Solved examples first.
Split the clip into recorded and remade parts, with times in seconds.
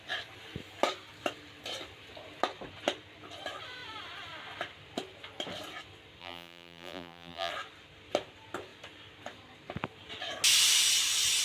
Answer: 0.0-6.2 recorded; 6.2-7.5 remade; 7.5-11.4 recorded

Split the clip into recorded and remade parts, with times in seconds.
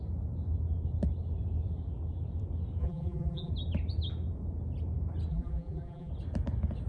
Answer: 0.0-2.8 recorded; 2.8-3.5 remade; 3.5-5.3 recorded; 5.3-6.1 remade; 6.1-6.9 recorded